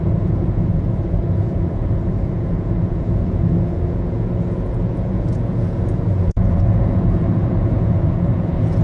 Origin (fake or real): fake